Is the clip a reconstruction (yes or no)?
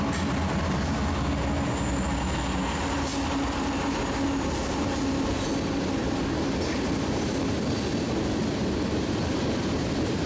no